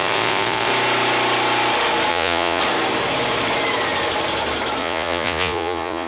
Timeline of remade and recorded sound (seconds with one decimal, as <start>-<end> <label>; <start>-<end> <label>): 0.0-0.7 remade; 0.7-2.1 recorded; 2.1-2.6 remade; 2.6-4.8 recorded; 4.8-6.1 remade